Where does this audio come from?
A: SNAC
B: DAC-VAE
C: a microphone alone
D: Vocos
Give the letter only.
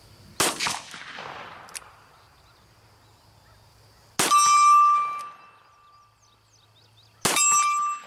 C